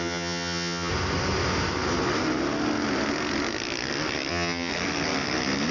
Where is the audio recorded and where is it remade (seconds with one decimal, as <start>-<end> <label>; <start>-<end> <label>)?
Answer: 0.0-0.9 remade; 0.9-4.3 recorded; 4.3-4.7 remade; 4.7-5.7 recorded